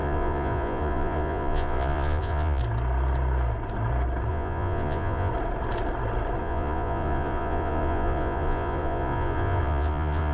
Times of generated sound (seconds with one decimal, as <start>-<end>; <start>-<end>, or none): 0.0-2.6; 4.3-5.3; 6.4-10.3

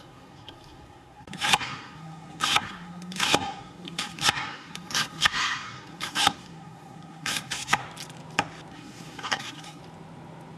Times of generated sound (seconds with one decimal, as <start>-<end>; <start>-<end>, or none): 0.0-7.8; 8.7-9.8

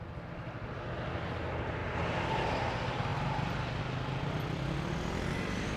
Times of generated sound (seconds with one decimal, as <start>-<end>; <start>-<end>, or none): 1.8-2.6

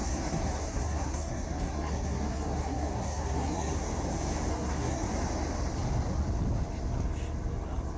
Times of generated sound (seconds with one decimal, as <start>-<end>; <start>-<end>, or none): 0.0-3.9; 4.5-5.1

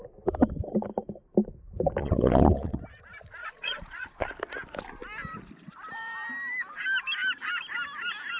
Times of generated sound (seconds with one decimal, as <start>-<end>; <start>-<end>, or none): 2.0-2.8; 3.4-4.3